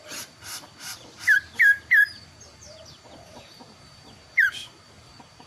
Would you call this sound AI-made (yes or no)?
yes